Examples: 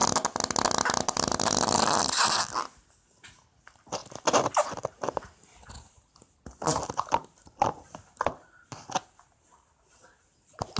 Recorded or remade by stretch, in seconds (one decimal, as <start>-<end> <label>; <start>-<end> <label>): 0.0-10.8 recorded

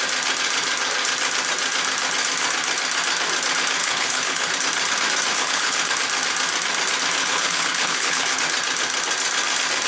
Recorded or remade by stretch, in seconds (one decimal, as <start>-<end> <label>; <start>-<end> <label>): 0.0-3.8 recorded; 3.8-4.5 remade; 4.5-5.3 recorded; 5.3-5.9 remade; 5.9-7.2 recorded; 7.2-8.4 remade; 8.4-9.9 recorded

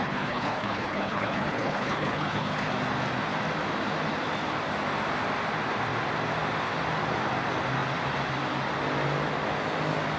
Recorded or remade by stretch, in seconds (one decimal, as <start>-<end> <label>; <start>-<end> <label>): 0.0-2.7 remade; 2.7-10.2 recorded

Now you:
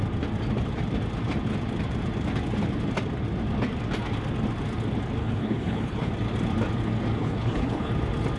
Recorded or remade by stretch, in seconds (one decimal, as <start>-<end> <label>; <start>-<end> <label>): 0.0-5.2 recorded; 5.2-6.1 remade; 6.1-7.2 recorded; 7.2-7.9 remade; 7.9-8.4 recorded